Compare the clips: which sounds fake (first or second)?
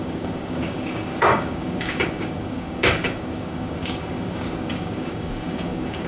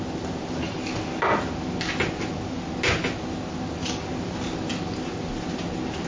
first